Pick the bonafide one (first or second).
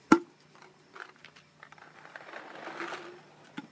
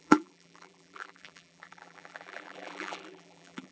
first